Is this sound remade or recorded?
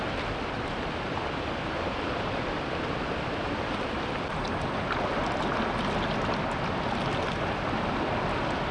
recorded